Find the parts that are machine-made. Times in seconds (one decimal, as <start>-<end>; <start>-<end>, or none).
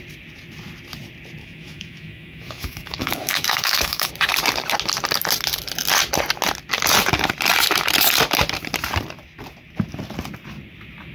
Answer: 1.4-4.1